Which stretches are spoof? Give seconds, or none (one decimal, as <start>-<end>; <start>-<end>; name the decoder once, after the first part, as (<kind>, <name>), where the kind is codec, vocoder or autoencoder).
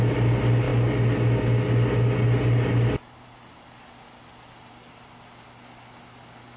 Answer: none